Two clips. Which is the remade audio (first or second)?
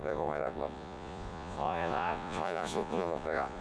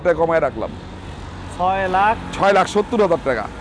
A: first